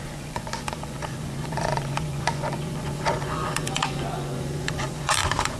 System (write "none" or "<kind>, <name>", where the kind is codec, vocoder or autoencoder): vocoder, Vocos